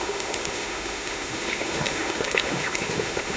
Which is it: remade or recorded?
remade